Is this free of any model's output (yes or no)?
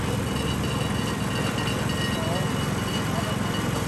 yes